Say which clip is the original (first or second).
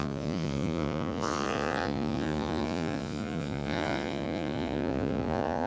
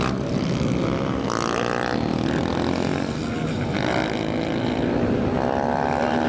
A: second